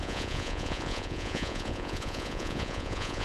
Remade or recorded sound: remade